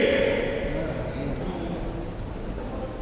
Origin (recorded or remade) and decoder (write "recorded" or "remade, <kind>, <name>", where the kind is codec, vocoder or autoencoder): recorded